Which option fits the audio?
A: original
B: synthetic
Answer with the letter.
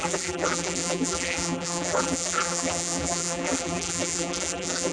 B